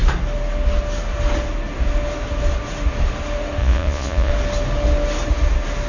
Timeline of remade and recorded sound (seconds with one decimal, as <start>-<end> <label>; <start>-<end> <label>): 0.0-3.6 recorded; 3.6-4.3 remade; 4.3-5.9 recorded